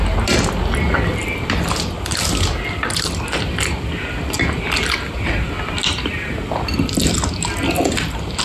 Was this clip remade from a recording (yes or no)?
no